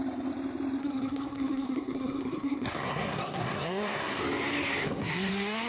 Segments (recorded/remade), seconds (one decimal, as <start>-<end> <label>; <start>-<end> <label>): 0.0-0.8 recorded; 0.8-4.2 remade; 4.2-4.8 recorded; 4.8-5.7 remade